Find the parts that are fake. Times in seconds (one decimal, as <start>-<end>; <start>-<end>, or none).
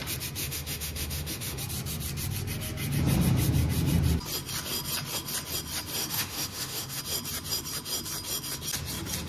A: 0.4-1.6; 6.0-7.0